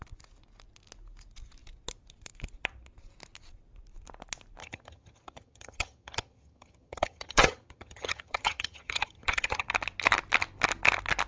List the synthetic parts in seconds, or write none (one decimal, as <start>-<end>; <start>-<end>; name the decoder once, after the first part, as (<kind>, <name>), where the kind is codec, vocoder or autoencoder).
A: 4.6-9.7 (vocoder, HiFi-GAN)